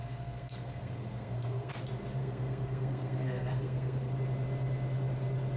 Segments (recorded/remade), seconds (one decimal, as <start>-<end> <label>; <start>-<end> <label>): 0.0-1.7 remade; 1.7-2.2 recorded; 2.2-4.1 remade; 4.1-5.6 recorded